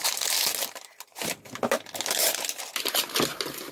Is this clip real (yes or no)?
yes